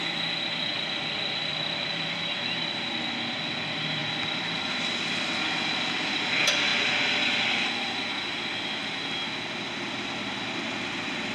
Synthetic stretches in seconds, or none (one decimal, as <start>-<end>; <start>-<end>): 1.5-2.2; 4.0-6.1